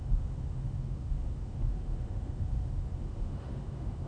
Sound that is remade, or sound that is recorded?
remade